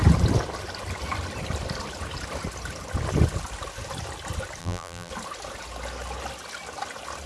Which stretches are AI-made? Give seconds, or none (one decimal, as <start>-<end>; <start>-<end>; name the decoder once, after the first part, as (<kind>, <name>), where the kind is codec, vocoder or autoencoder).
4.6-5.1 (vocoder, BigVGAN v2)